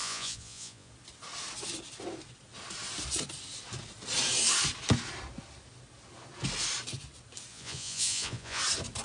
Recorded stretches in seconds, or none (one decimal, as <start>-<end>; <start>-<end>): 0.9-7.5; 8.6-9.0